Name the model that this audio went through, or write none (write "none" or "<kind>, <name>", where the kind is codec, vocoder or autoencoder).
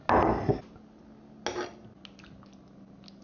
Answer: none